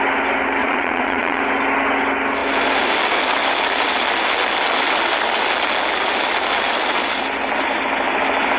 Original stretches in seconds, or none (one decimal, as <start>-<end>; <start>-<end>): 0.0-0.6; 1.4-8.6